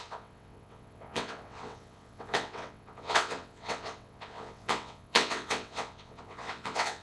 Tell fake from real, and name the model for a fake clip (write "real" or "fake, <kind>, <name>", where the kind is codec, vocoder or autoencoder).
fake, vocoder, WaveNeXt